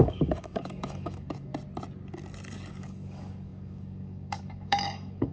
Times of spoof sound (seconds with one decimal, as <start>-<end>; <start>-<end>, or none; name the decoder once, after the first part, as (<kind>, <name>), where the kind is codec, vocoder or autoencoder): 0.0-1.5 (codec, DAC); 2.7-5.3

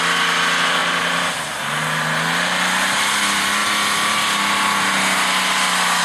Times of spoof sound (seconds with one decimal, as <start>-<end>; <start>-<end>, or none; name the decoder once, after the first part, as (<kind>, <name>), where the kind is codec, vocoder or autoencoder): none

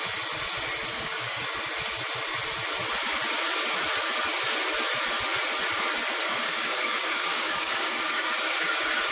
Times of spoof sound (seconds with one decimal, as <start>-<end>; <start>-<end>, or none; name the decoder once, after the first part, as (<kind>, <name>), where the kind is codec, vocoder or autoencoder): 0.9-1.4 (codec, DAC); 6.3-8.3

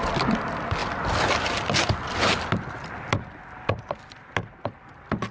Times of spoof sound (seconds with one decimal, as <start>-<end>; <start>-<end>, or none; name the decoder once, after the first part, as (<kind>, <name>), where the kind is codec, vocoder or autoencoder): none

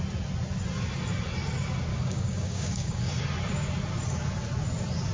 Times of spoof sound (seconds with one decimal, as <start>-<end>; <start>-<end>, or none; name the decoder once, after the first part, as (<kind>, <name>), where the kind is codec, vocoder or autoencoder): 1.9-3.2 (codec, DAC)

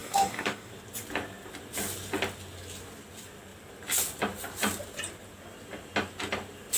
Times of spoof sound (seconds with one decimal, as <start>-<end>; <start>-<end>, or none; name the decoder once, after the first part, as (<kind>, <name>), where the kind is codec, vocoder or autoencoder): 0.0-0.7 (codec, DAC)

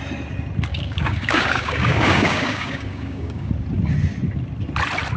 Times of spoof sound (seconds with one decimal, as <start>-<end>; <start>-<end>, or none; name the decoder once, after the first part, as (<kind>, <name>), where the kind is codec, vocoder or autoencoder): 0.7-3.5 (codec, DAC)